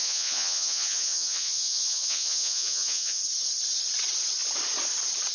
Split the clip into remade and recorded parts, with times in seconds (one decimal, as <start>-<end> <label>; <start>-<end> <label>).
0.0-3.2 remade; 3.2-5.3 recorded